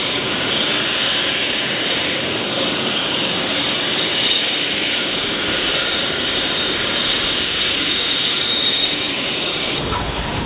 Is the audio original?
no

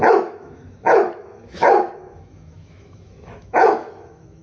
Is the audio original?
no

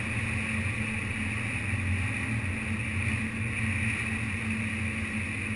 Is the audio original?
yes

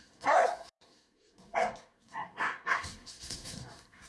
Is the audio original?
no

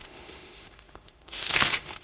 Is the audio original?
no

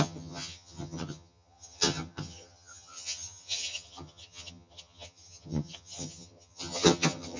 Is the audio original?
no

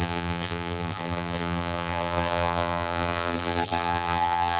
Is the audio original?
no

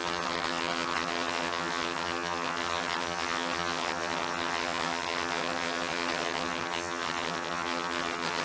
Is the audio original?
no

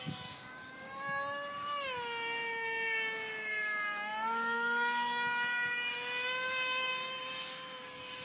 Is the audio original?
no